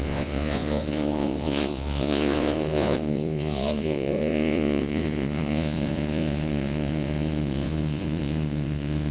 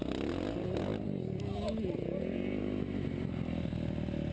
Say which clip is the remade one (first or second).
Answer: first